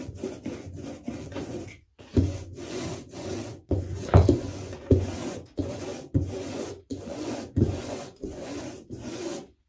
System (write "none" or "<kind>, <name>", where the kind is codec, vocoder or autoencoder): vocoder, Vocos